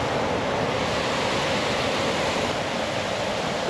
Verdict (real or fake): real